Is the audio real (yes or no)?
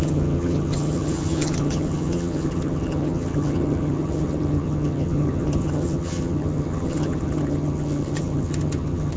no